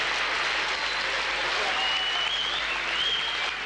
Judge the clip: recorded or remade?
recorded